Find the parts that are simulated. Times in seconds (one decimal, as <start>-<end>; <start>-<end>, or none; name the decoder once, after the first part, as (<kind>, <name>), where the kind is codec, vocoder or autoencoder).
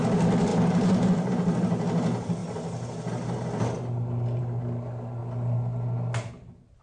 none